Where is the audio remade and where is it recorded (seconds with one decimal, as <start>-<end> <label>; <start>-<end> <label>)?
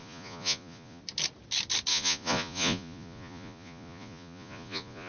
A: 0.0-1.0 remade; 1.0-1.9 recorded; 1.9-5.1 remade